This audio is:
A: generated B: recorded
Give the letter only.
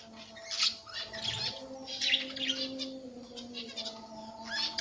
B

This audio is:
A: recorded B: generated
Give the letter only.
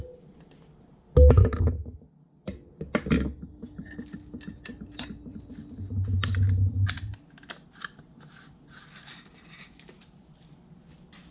A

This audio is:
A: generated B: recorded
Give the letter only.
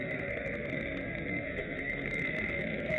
A